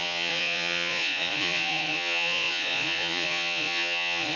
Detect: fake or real fake